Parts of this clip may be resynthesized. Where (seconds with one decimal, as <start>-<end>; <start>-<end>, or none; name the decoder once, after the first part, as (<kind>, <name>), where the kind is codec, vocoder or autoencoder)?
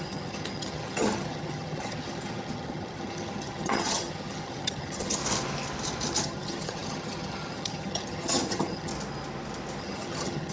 0.0-5.2 (vocoder, HiFi-GAN); 6.2-8.9; 9.8-10.5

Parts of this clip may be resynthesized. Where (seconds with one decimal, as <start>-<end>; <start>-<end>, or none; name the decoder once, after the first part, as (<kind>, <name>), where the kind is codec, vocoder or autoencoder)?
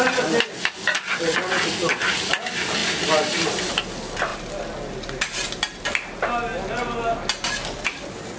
none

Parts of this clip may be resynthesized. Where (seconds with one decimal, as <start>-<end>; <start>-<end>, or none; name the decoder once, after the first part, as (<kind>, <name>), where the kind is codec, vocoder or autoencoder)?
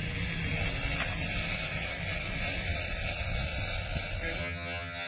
4.4-5.1 (vocoder, HiFi-GAN)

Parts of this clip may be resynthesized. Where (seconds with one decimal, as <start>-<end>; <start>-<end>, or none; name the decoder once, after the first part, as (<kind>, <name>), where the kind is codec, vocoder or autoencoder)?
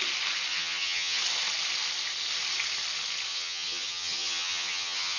0.5-1.2 (vocoder, HiFi-GAN); 3.3-5.2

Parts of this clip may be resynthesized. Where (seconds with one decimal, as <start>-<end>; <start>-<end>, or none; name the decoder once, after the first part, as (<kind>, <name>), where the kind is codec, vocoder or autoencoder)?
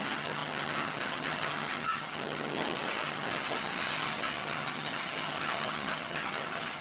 0.0-6.8 (vocoder, HiFi-GAN)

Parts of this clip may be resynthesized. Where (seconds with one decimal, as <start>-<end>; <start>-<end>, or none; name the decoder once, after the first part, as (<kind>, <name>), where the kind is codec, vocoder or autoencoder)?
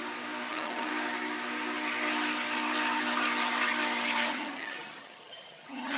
0.5-0.9 (vocoder, HiFi-GAN); 4.3-6.0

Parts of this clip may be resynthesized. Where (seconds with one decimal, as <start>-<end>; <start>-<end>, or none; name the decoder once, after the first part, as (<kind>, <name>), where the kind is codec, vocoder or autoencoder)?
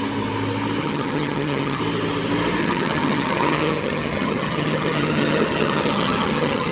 0.8-1.8 (vocoder, HiFi-GAN); 2.6-6.7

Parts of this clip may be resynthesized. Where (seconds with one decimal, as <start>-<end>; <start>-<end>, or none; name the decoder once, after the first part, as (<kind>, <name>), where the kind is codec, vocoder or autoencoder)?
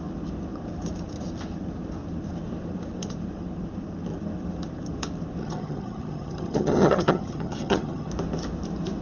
5.4-8.1 (vocoder, HiFi-GAN)